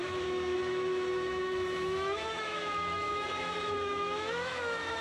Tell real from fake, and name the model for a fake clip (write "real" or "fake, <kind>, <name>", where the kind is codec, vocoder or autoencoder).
fake, autoencoder, DAC-VAE